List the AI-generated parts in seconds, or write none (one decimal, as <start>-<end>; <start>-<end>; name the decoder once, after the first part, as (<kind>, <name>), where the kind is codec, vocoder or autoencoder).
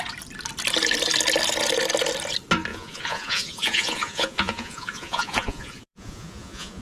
2.7-6.8 (vocoder, Vocos)